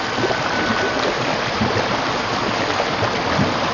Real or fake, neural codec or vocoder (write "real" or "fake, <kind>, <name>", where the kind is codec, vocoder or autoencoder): real